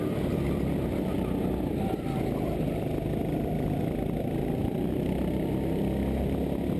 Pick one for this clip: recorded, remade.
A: recorded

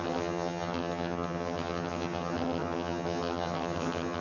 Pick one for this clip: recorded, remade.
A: remade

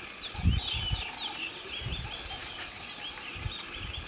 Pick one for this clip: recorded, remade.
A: recorded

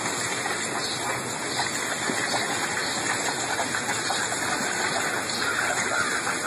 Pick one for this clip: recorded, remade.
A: recorded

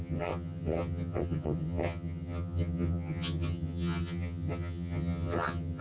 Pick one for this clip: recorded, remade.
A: remade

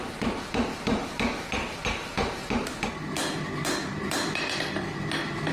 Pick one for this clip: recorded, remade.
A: remade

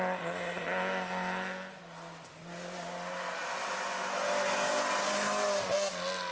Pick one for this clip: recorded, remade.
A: recorded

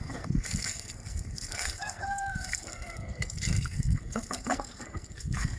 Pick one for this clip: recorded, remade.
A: remade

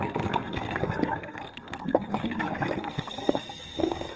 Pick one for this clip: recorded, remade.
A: remade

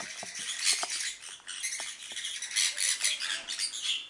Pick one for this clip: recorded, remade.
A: recorded